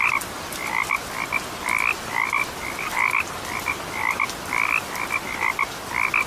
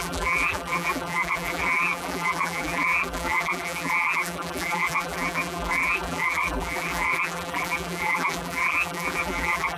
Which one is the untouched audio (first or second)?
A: first